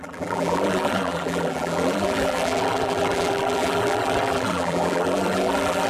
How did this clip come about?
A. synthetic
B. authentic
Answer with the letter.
A